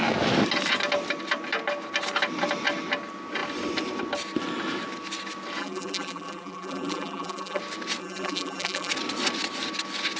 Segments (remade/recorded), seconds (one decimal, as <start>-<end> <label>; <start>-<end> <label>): 0.0-5.6 recorded; 5.6-7.6 remade; 7.6-8.0 recorded; 8.0-8.9 remade; 8.9-10.2 recorded

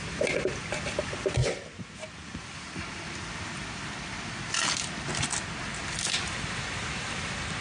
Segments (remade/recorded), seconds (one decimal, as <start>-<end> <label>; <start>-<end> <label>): 0.0-7.6 recorded